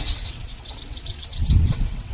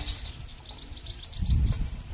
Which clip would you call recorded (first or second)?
second